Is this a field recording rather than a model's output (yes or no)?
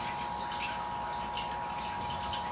yes